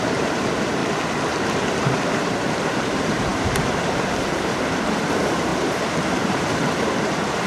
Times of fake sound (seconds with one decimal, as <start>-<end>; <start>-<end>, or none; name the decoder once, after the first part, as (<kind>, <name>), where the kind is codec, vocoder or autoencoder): 0.0-0.8 (vocoder, BigVGAN v2); 1.6-7.5